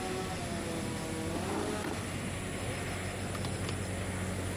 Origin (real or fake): real